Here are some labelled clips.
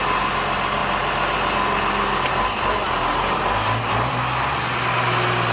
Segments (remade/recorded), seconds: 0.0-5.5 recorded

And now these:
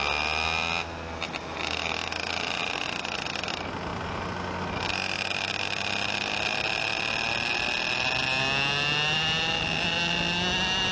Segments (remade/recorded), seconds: 0.0-10.9 recorded

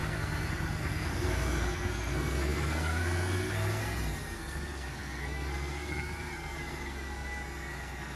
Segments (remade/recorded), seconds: 0.0-8.2 remade

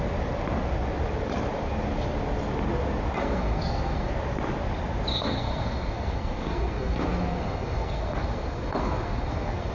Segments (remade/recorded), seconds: 0.0-3.2 recorded; 3.2-4.1 remade; 4.1-5.1 recorded; 5.1-9.7 remade

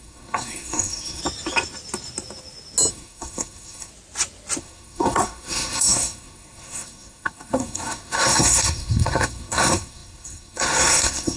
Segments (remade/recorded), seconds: 0.0-1.2 remade; 1.2-2.9 recorded; 2.9-3.9 remade; 3.9-4.6 recorded; 4.6-11.4 remade